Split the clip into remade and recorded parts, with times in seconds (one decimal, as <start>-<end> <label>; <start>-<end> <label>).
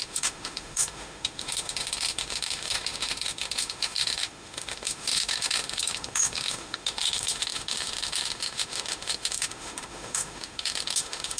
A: 0.0-11.4 remade